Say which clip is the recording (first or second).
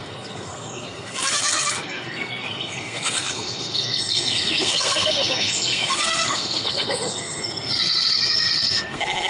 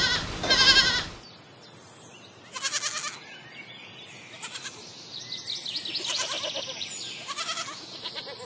second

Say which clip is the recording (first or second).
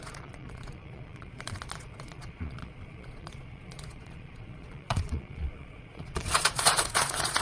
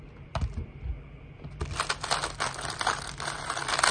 second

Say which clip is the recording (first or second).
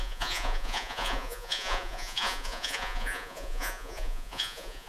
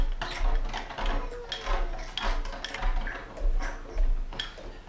second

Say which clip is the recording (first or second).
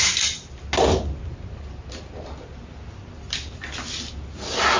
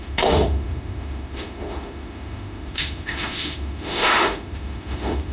first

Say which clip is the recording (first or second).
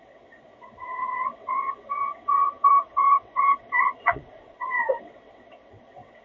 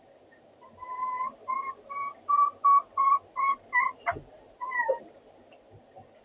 second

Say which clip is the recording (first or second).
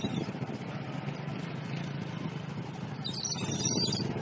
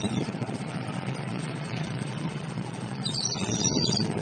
first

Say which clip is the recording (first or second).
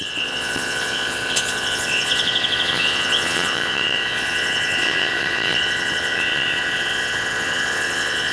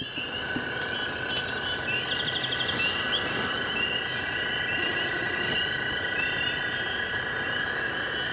second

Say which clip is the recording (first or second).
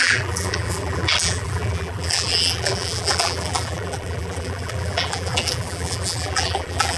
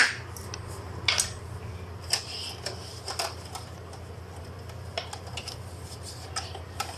second